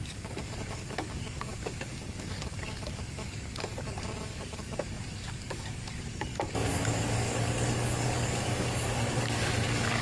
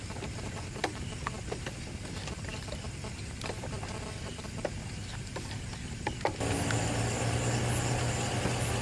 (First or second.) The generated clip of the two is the first